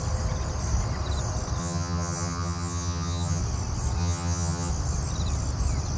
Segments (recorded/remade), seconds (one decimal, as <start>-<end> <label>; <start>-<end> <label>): 0.0-1.6 recorded; 1.6-3.4 remade; 3.4-4.0 recorded; 4.0-4.7 remade; 4.7-6.0 recorded